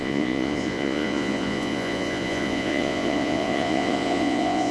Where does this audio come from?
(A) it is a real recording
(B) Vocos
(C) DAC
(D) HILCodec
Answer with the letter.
B